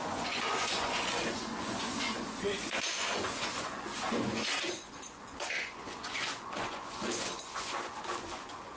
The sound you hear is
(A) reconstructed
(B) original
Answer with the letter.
A